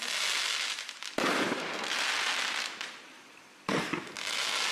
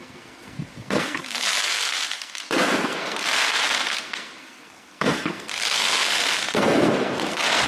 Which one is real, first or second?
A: first